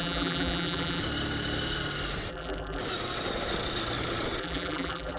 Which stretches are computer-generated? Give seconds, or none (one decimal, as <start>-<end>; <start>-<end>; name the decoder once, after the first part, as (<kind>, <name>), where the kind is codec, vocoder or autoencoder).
0.0-1.0 (vocoder, BigVGAN v2); 2.3-2.8; 4.4-5.2